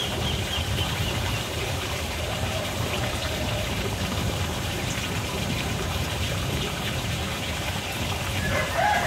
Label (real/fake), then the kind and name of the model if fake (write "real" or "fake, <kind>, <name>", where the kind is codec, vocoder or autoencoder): fake, vocoder, BigVGAN v2